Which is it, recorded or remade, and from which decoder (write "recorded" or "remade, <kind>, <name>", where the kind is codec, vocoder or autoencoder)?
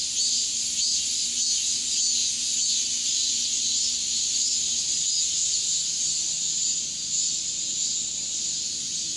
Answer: recorded